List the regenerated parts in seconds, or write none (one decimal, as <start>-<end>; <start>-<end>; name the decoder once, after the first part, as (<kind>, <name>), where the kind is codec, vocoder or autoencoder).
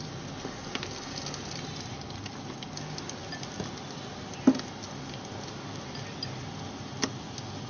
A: none